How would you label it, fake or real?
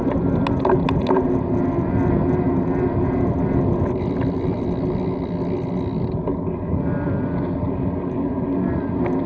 real